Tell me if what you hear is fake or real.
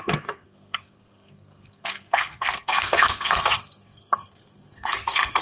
fake